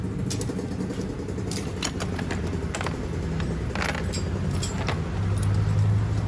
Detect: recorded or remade recorded